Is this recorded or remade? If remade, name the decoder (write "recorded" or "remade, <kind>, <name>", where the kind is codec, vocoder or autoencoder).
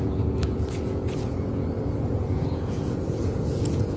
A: remade, vocoder, Vocos